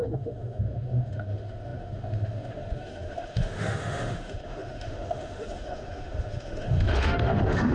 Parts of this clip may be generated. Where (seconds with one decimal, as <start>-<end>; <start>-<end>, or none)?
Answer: 0.0-7.7